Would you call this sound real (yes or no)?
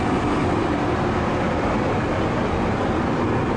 yes